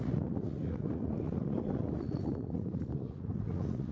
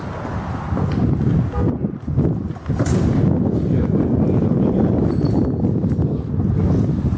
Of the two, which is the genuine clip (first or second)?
second